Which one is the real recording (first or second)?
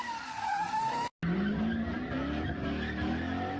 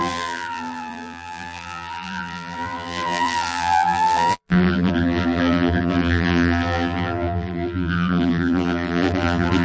first